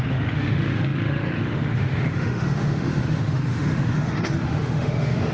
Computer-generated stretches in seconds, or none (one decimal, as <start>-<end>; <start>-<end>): 0.0-5.3